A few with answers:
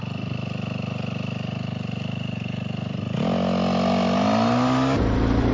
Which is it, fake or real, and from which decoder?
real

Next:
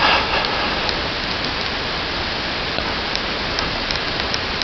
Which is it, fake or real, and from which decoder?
real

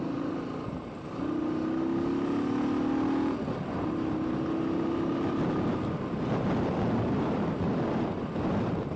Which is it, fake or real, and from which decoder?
real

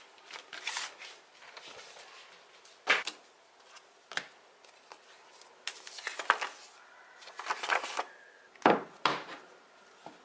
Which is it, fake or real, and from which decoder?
real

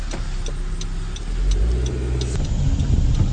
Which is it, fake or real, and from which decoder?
real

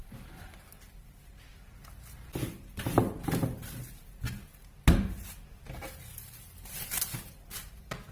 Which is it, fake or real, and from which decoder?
real